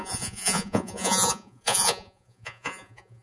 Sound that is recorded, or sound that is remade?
remade